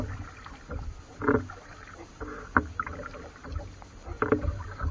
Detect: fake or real real